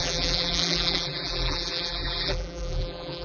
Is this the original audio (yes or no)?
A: no